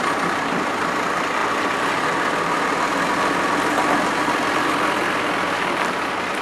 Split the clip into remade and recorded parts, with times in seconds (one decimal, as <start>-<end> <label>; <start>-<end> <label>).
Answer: 0.0-1.4 remade; 1.4-4.2 recorded; 4.2-6.4 remade